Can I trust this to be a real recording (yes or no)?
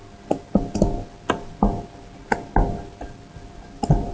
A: yes